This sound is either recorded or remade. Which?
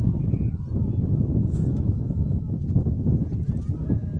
recorded